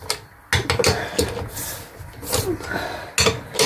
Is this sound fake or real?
real